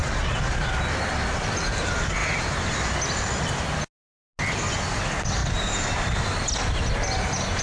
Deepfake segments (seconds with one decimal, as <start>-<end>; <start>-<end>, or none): 0.0-0.7